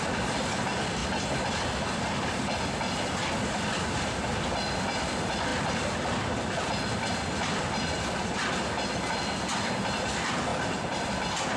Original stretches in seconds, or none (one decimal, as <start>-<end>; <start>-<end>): 0.0-10.5; 11.1-11.6